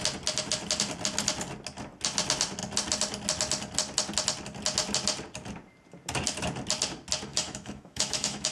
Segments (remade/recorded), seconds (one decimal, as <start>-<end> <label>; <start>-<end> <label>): 0.0-7.3 recorded; 7.3-8.5 remade